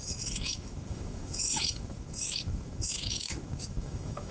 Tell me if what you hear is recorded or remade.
remade